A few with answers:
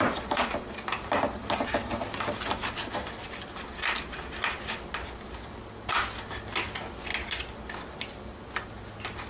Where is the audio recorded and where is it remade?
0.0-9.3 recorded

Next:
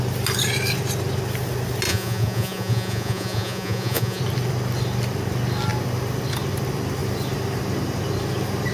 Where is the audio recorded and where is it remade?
0.0-1.9 recorded; 1.9-4.2 remade; 4.2-8.7 recorded

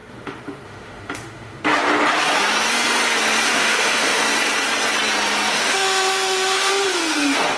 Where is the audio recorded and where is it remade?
0.0-1.6 remade; 1.6-3.5 recorded; 3.5-4.2 remade; 4.2-5.5 recorded; 5.5-6.7 remade; 6.7-7.6 recorded

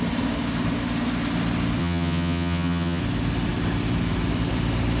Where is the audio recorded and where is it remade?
0.0-1.8 recorded; 1.8-3.0 remade; 3.0-5.0 recorded